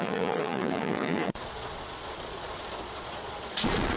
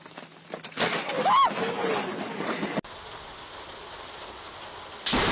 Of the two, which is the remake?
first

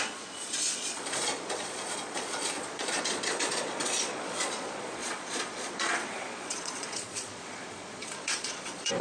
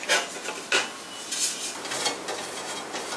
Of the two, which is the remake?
first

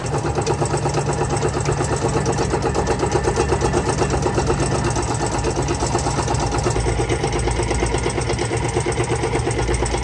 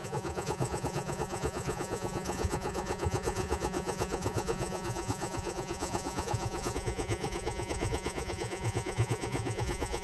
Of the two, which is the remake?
second